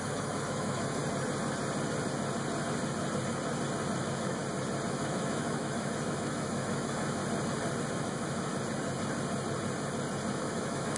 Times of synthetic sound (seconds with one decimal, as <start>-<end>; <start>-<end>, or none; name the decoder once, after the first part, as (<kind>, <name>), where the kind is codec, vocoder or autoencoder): 0.0-1.0 (autoencoder, DAC-VAE); 4.0-4.4; 4.9-7.2; 7.9-8.5; 10.3-11.0